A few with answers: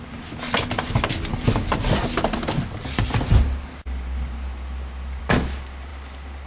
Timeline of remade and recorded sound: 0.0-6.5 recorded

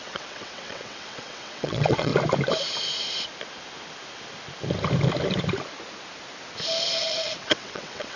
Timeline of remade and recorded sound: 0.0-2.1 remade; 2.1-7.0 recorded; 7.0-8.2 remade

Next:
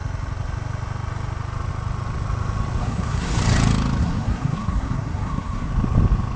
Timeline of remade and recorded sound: 0.0-2.8 recorded; 2.8-3.4 remade; 3.4-4.0 recorded; 4.0-5.7 remade; 5.7-6.4 recorded